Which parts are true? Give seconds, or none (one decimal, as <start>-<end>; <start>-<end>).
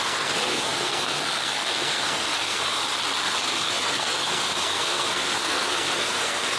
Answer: 2.8-3.4